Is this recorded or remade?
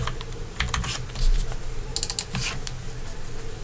recorded